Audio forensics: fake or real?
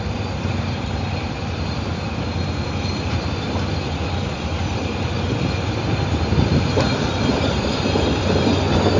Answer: fake